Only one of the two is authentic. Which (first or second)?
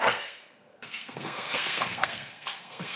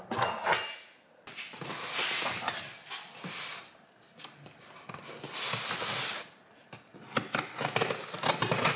second